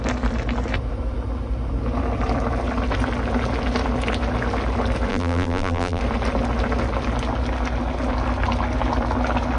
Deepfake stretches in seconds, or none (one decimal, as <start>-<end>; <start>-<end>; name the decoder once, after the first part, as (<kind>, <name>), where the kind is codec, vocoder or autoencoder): 5.1-6.0 (vocoder, BigVGAN v2)